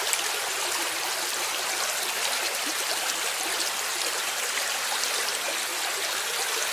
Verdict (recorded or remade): recorded